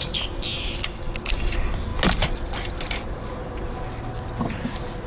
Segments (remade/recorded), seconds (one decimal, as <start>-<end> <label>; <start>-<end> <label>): 0.0-5.1 recorded